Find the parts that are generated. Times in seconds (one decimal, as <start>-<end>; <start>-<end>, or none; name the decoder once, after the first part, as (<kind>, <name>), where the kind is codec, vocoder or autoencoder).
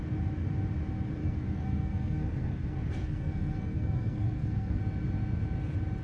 1.2-4.8 (codec, SNAC)